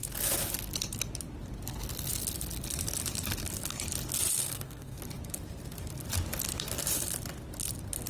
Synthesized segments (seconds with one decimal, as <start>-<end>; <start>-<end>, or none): 4.4-5.0